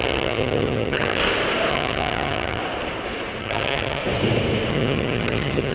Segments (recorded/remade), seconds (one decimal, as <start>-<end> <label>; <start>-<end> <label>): 0.0-1.2 remade; 1.2-1.7 recorded; 1.7-2.6 remade; 2.6-3.4 recorded; 3.4-4.0 remade; 4.0-4.7 recorded; 4.7-5.7 remade